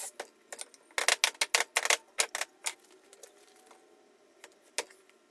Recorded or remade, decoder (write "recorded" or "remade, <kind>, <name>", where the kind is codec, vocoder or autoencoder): recorded